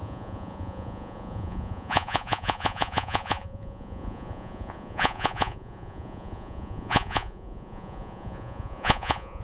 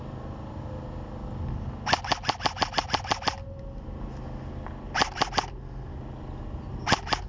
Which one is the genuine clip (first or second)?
second